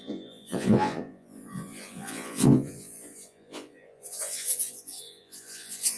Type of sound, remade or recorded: remade